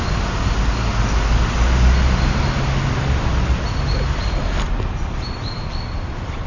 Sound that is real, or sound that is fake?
real